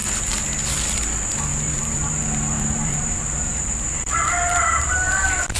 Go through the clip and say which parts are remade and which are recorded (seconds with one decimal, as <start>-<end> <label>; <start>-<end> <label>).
0.0-1.5 recorded; 1.5-4.9 remade; 4.9-5.6 recorded